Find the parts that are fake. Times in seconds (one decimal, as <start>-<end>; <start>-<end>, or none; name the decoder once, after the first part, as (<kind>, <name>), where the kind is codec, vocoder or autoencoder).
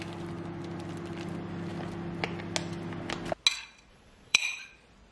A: 3.9-4.4 (vocoder, Vocos)